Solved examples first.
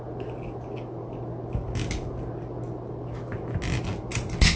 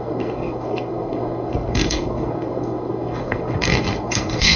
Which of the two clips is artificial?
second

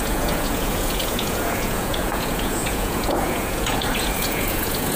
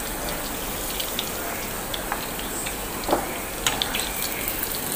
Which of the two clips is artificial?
first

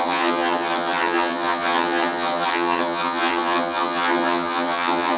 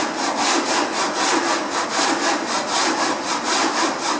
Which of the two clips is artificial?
first